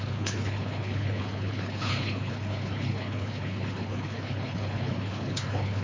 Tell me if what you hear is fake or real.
fake